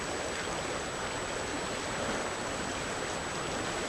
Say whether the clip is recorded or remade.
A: recorded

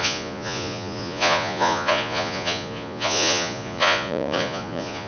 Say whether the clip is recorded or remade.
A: remade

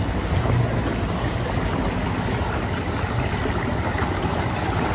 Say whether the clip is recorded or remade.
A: recorded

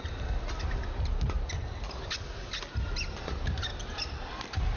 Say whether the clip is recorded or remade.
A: recorded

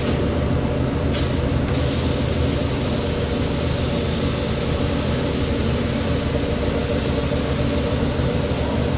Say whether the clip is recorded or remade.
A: recorded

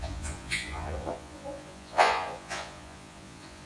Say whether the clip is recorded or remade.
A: remade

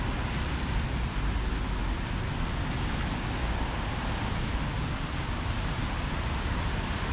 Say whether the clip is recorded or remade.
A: recorded